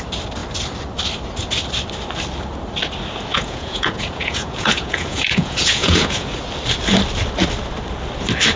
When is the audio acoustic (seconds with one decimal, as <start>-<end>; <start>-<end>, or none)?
0.0-3.3; 6.3-8.6